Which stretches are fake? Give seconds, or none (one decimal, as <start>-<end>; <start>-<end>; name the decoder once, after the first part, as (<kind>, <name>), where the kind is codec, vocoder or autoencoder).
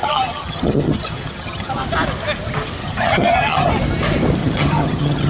0.0-1.7 (vocoder, HiFi-GAN); 2.8-3.7; 4.4-5.3